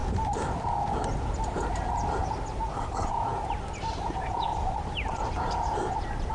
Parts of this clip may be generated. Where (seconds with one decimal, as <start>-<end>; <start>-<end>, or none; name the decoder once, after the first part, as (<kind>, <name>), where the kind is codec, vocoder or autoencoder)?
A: none